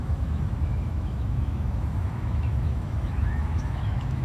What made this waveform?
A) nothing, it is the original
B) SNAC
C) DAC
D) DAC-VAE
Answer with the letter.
D